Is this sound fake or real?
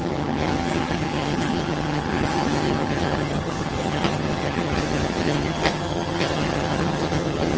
fake